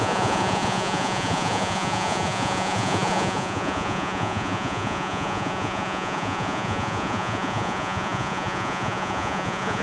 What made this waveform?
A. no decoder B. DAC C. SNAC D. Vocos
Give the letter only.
D